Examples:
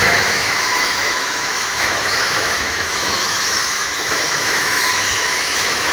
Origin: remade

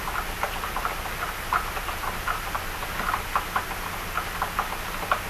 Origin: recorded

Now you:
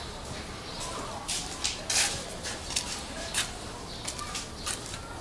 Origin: recorded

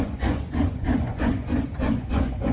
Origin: remade